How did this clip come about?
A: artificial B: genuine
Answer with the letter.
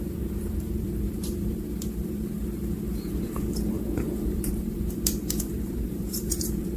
A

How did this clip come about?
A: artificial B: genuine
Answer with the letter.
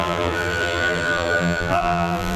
A